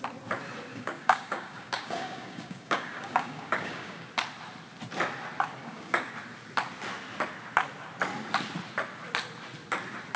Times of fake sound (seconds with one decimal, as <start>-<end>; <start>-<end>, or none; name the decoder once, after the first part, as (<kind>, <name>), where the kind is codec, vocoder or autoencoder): 0.7-4.1 (codec, DAC); 5.6-6.1